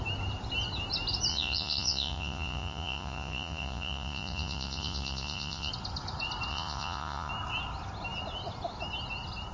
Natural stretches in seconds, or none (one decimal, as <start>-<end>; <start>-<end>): 0.0-1.3; 5.7-6.5; 7.3-9.5